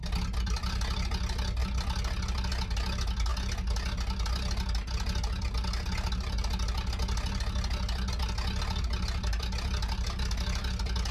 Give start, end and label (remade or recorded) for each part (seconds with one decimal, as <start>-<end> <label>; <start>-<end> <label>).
0.0-11.1 recorded